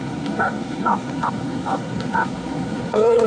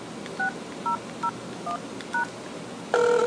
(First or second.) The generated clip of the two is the first